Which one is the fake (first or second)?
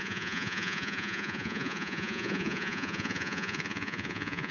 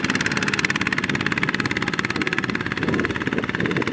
first